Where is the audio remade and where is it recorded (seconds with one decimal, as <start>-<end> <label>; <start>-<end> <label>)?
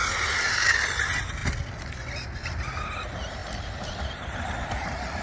0.0-3.4 recorded; 3.4-4.2 remade; 4.2-5.2 recorded